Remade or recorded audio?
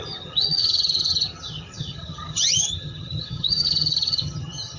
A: remade